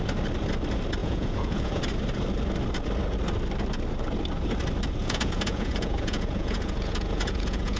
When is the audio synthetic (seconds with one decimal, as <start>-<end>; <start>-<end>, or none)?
1.0-1.8; 5.0-7.8